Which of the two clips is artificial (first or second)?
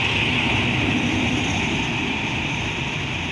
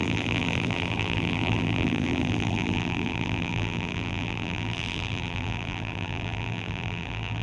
second